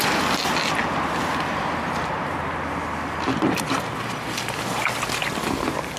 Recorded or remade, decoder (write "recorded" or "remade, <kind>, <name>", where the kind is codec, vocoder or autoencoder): recorded